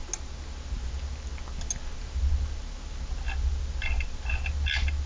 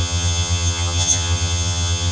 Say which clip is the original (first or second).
first